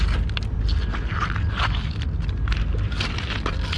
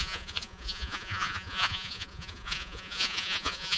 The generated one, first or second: second